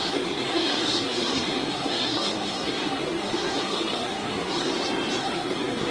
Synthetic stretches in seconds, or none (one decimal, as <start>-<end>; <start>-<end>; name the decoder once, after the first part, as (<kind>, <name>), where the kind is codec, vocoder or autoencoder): 0.0-4.7 (codec, SNAC); 5.2-5.9